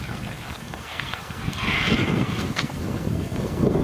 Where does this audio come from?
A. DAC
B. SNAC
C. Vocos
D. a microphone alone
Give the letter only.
B